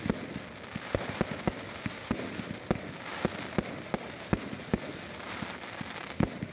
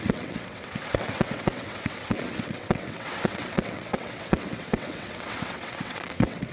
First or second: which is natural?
first